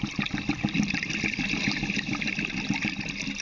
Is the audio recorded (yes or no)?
yes